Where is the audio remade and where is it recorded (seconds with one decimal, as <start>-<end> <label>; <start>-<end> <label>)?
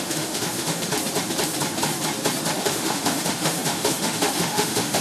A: 0.0-0.9 remade; 0.9-2.6 recorded; 2.6-5.0 remade